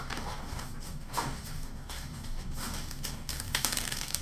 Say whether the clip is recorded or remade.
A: remade